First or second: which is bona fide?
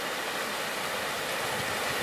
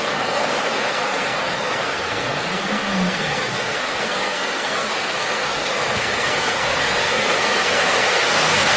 first